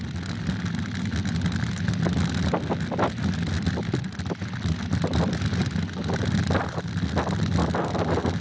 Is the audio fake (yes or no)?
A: no